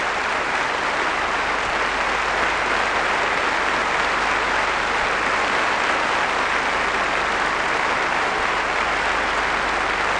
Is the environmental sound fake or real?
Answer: real